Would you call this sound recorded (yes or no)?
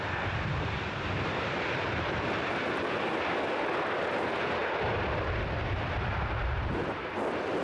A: no